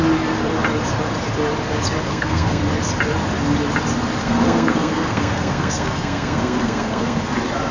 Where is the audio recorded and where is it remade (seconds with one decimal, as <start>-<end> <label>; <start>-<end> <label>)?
0.0-2.1 recorded; 2.1-2.6 remade; 2.6-4.2 recorded; 4.2-7.2 remade; 7.2-7.7 recorded